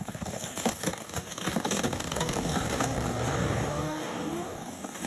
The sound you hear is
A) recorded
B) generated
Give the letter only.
B